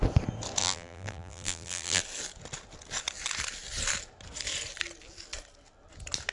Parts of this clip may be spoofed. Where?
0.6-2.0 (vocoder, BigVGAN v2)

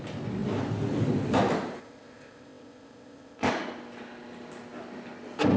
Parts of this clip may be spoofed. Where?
1.8-3.5 (codec, ZipCodec)

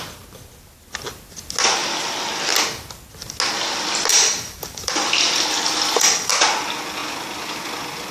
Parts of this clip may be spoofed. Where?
4.1-6.3 (vocoder, BigVGAN v2)

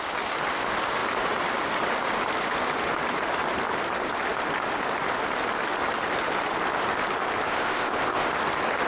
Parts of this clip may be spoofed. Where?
7.5-8.3 (codec, ZipCodec)

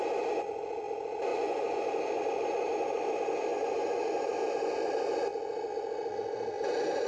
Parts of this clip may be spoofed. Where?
1.3-1.8 (vocoder, Vocos); 3.5-4.1

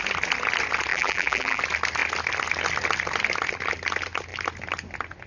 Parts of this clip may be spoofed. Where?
0.9-1.6 (vocoder, BigVGAN v2)

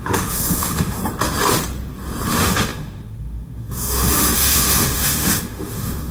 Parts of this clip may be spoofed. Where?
0.0-1.0 (autoencoder, DAC-VAE); 2.3-6.1

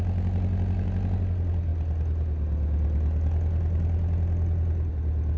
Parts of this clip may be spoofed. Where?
none